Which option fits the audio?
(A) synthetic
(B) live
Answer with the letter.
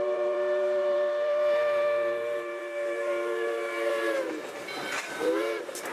A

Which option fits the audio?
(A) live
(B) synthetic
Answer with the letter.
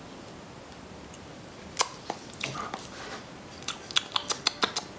A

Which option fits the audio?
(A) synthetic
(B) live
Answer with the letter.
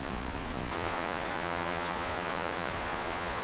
A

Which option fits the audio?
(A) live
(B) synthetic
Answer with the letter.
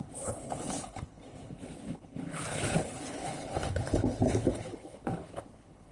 B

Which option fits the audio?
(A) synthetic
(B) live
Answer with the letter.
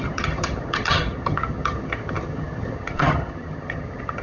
A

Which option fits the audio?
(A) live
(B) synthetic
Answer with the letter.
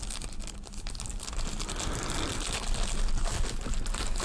A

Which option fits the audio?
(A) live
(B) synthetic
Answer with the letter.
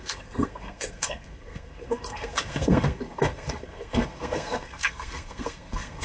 B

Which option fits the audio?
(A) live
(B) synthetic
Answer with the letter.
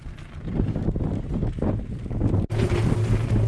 A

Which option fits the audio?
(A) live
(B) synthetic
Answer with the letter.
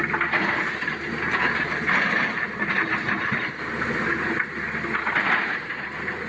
A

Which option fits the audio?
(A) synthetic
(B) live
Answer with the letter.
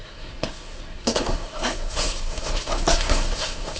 A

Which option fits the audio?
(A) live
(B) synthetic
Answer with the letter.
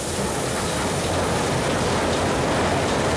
A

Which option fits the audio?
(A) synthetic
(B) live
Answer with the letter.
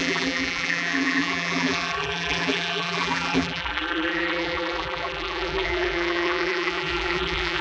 A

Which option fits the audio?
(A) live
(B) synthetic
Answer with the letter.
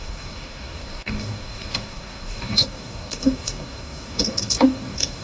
B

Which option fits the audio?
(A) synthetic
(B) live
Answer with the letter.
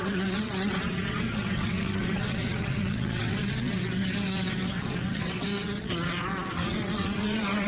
A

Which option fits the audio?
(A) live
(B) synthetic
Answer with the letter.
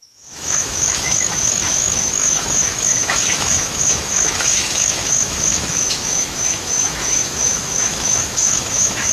B